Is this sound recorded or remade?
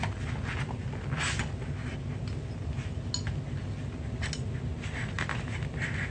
recorded